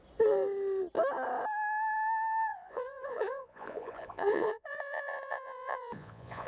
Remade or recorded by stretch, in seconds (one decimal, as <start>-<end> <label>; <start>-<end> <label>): 0.0-2.5 recorded; 2.5-6.5 remade